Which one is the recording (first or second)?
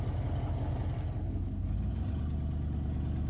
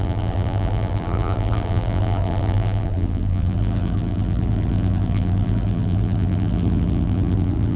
first